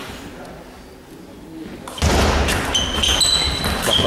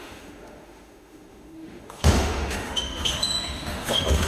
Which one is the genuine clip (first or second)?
first